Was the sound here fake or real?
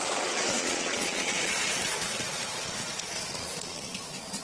fake